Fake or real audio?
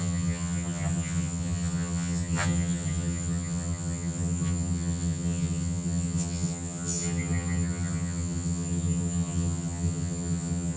fake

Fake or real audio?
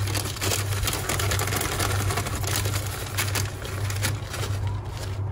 real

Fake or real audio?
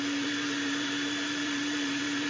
fake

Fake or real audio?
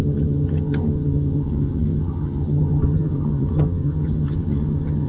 fake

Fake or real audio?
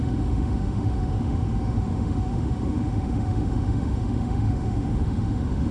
fake